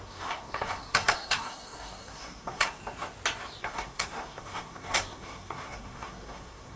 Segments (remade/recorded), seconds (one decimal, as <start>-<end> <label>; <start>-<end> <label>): 0.0-2.8 remade; 2.8-3.6 recorded; 3.6-6.8 remade